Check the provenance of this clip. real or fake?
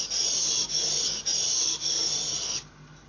real